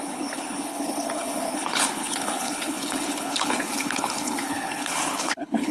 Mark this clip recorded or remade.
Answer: remade